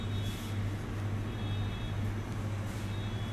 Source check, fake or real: real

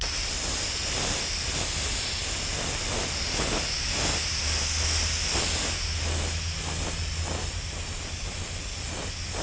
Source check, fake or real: real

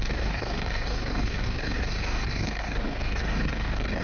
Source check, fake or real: fake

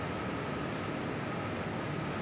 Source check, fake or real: real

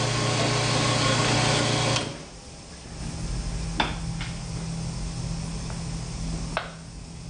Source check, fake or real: real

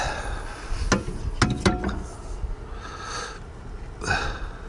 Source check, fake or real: real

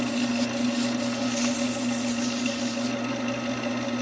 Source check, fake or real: real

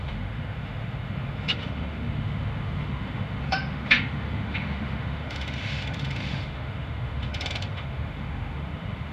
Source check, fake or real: fake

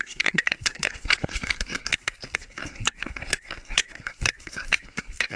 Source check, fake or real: fake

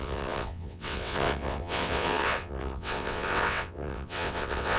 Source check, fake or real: fake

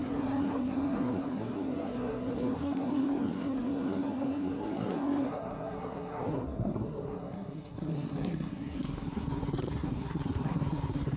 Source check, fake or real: fake